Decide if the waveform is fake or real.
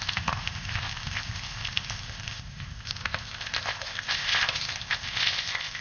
fake